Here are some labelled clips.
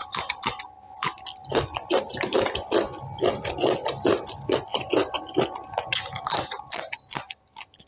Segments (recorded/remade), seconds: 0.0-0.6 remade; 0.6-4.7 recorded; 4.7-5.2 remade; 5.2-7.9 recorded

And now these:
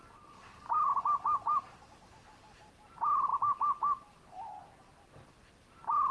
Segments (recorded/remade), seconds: 0.0-0.9 recorded; 0.9-3.3 remade; 3.3-5.5 recorded; 5.5-6.1 remade

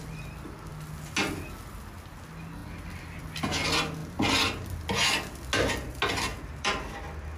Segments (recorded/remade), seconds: 0.0-6.3 recorded; 6.3-6.9 remade; 6.9-7.4 recorded

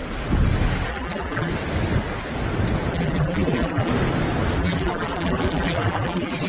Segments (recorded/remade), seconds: 0.0-0.9 recorded; 0.9-1.5 remade; 1.5-2.9 recorded; 2.9-3.9 remade; 3.9-4.6 recorded; 4.6-6.5 remade

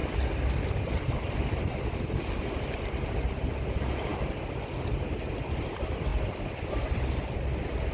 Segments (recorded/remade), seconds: 0.0-7.9 recorded

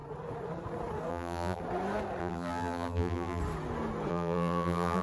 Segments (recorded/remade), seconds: 0.0-1.1 recorded; 1.1-1.6 remade; 1.6-2.2 recorded; 2.2-3.4 remade; 3.4-4.1 recorded; 4.1-5.0 remade